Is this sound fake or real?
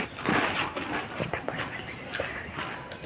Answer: real